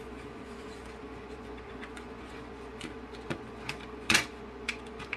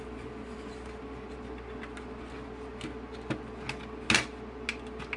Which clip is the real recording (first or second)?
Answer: second